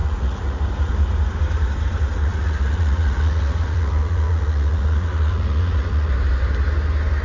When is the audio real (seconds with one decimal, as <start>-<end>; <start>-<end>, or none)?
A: 0.6-2.1; 6.1-7.2